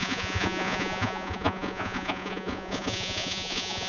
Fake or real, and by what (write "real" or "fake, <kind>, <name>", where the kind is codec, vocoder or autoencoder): fake, vocoder, Vocos